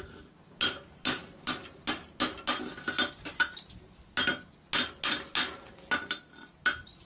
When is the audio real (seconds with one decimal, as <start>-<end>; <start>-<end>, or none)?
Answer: 0.0-7.1